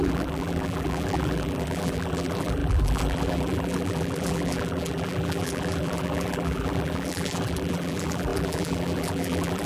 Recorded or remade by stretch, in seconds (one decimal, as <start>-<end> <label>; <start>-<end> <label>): 0.0-9.7 remade

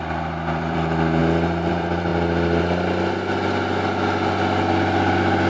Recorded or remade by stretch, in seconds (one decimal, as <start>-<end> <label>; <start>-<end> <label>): 0.0-1.2 remade; 1.2-1.7 recorded; 1.7-2.1 remade; 2.1-5.5 recorded

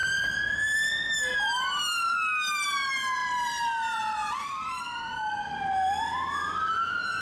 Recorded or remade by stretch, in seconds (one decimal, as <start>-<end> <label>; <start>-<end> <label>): 0.0-0.9 remade; 0.9-3.2 recorded; 3.2-4.8 remade; 4.8-7.2 recorded